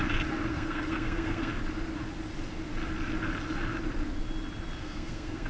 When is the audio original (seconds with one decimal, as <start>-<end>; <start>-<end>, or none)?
0.0-0.5; 1.5-4.8